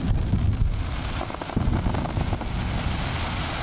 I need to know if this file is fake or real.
real